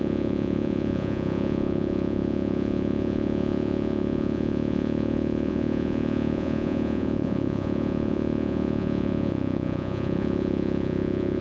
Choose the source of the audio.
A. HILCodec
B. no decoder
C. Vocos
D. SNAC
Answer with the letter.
C